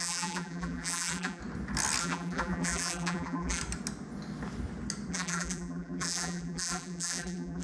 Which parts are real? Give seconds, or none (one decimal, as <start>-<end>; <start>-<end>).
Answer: 1.4-2.0; 3.6-5.1